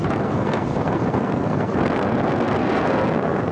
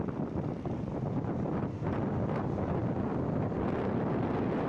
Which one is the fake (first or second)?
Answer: first